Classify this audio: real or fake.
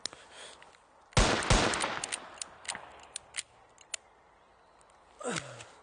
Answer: real